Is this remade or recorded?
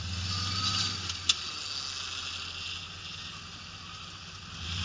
recorded